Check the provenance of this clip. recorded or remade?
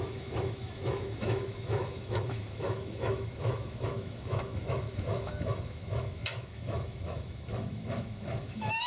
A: remade